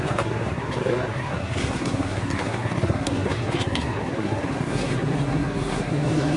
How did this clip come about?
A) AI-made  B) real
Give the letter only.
A